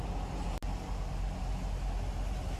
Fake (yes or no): no